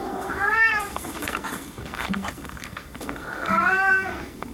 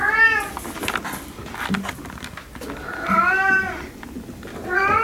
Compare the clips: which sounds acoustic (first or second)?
second